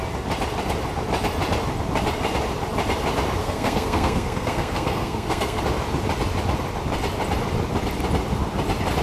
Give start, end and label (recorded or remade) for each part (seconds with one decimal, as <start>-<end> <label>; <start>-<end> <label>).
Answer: 0.0-3.4 recorded; 3.4-5.6 remade; 5.6-9.0 recorded